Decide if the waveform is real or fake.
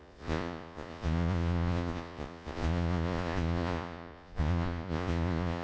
fake